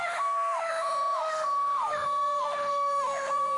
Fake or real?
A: fake